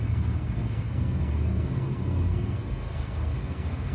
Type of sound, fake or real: fake